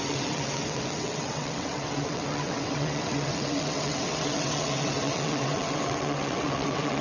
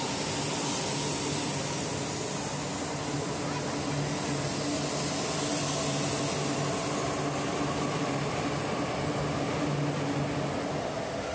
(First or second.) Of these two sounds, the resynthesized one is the first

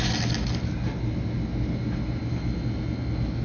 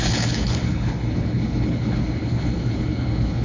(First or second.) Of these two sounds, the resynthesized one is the second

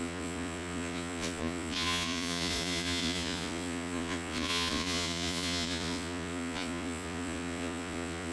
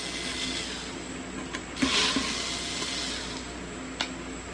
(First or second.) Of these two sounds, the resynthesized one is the first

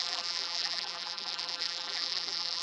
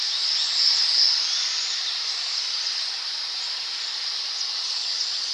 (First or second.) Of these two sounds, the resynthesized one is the first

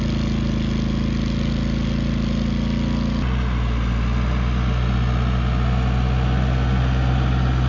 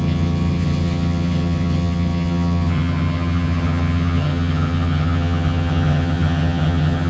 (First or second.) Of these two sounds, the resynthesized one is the second